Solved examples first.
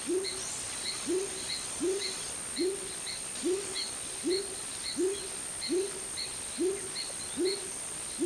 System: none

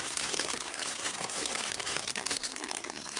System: codec, SNAC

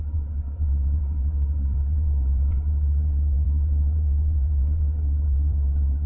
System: vocoder, WaveNeXt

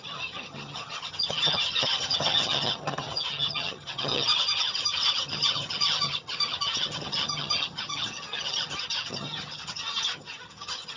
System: vocoder, HiFi-GAN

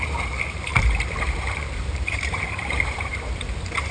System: vocoder, BigVGAN v2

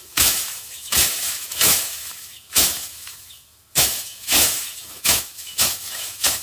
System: autoencoder, DAC-VAE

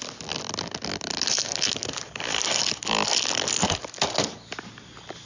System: none